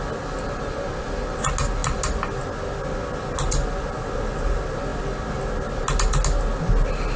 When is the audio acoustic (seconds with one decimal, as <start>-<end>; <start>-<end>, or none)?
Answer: 0.0-7.2